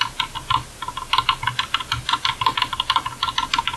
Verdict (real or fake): real